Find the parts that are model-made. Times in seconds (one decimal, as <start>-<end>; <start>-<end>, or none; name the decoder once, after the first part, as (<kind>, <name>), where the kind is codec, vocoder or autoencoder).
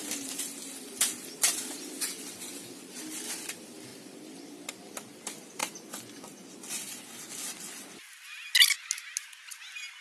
2.1-2.9 (vocoder, Vocos); 5.6-6.7